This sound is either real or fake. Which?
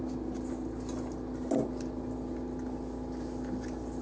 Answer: real